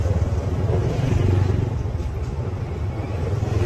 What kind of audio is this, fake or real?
real